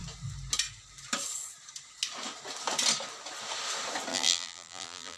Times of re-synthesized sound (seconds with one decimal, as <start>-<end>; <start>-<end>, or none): 4.1-5.2